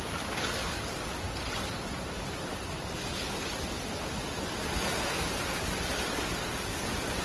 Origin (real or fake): real